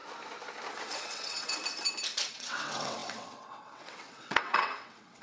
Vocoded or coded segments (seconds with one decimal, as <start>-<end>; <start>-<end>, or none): 0.7-1.6; 2.3-5.2